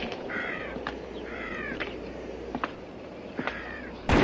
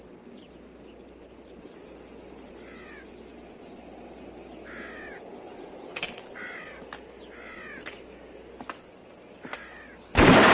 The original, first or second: second